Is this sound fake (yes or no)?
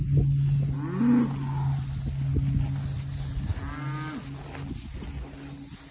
no